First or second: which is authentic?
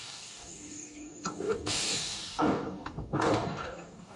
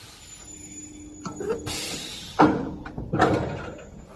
second